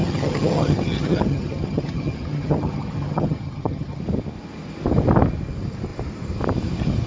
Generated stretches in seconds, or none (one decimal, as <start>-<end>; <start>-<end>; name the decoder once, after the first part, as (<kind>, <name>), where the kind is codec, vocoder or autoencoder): 0.0-4.0 (vocoder, HiFi-GAN)